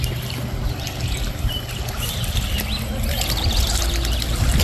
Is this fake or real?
real